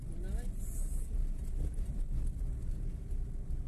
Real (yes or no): yes